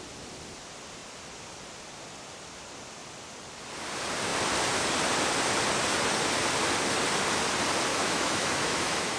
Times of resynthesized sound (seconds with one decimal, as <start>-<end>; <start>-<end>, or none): 7.9-9.2

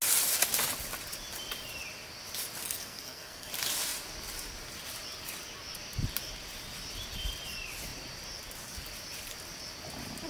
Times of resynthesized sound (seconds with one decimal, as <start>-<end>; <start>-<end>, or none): 2.6-3.5

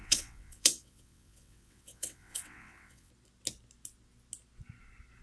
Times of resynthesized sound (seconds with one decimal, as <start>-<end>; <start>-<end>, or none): 0.0-3.1

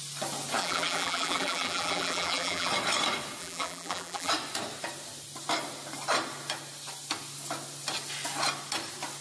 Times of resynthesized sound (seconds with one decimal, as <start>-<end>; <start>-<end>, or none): 0.6-2.7; 3.4-4.3

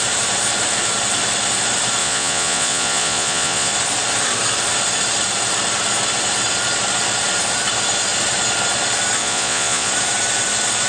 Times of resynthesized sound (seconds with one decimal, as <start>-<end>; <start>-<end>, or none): 2.0-3.7; 9.2-9.9

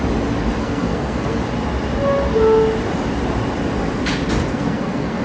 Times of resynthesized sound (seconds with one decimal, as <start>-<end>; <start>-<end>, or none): 0.6-1.4; 4.5-5.2

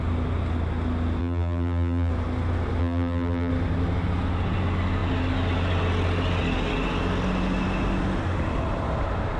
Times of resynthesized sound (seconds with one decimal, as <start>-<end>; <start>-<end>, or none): 1.2-2.1; 2.8-3.5

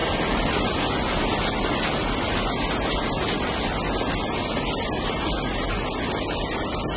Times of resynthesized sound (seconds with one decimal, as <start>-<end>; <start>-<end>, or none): none